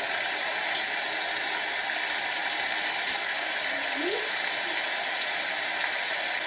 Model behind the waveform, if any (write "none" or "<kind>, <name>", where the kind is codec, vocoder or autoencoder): none